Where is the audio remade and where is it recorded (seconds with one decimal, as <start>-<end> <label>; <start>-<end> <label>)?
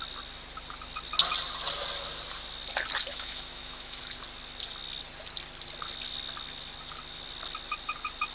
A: 0.0-3.1 recorded; 3.1-4.0 remade; 4.0-8.3 recorded